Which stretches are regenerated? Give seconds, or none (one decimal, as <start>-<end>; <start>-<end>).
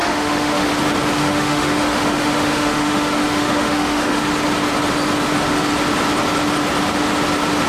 0.0-0.7; 1.2-4.3